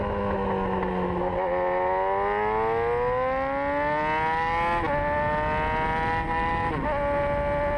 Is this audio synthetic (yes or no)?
no